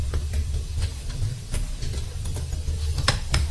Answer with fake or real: fake